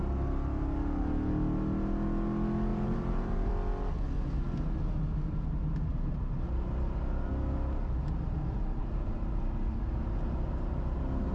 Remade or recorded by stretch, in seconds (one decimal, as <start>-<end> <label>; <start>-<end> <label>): 0.0-2.7 recorded; 2.7-3.5 remade; 3.5-8.8 recorded; 8.8-9.4 remade; 9.4-11.3 recorded